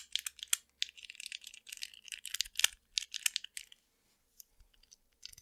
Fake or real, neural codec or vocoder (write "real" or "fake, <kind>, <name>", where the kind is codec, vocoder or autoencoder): real